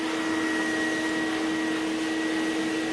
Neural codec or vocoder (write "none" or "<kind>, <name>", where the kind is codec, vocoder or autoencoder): none